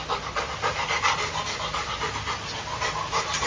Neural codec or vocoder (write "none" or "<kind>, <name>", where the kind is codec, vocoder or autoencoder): none